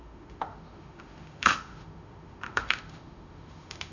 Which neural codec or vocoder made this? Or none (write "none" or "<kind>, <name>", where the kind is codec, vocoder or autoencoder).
autoencoder, DAC-VAE